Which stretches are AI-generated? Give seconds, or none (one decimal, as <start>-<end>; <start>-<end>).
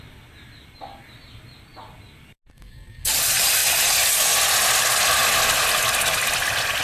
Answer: 2.5-3.1